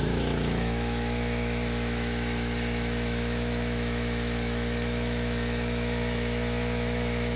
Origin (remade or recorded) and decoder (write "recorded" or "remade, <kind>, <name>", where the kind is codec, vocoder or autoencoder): remade, autoencoder, DAC-VAE